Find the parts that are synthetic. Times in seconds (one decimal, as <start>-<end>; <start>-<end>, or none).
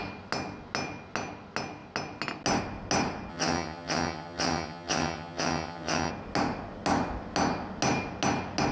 3.3-6.1